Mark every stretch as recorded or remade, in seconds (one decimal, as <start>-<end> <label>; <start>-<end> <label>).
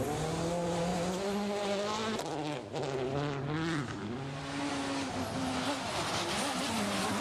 0.0-7.2 recorded